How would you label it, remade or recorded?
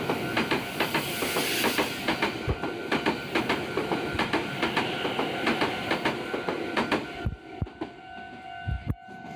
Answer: recorded